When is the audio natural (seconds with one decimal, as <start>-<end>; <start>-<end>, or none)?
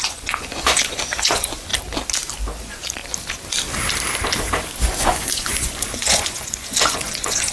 1.7-2.6; 3.0-5.0